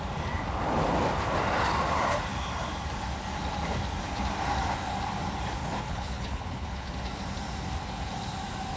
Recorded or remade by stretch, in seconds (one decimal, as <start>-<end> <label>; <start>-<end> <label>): 0.0-5.6 recorded; 5.6-6.9 remade; 6.9-8.8 recorded